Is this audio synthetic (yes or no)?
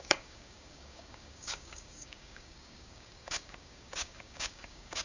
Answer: yes